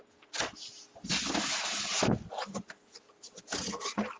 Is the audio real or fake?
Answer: real